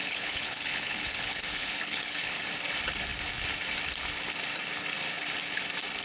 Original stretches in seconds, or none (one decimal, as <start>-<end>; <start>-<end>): 2.4-6.0